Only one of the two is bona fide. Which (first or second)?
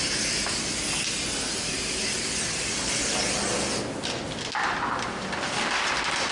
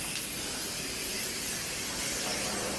first